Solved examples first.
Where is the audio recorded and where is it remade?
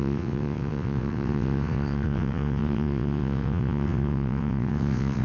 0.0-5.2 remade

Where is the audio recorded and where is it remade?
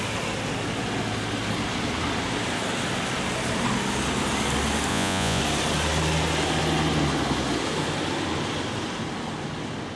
0.0-4.9 recorded; 4.9-5.4 remade; 5.4-10.0 recorded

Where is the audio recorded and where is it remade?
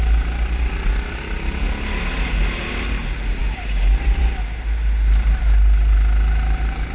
0.0-6.9 recorded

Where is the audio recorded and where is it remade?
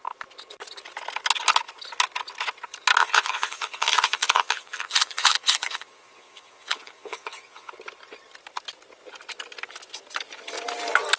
0.0-3.0 recorded; 3.0-7.7 remade; 7.7-11.2 recorded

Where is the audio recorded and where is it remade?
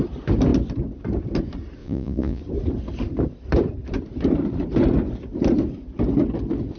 0.0-1.8 recorded; 1.8-2.4 remade; 2.4-6.8 recorded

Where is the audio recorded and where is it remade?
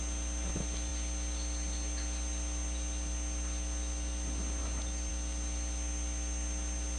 0.0-7.0 recorded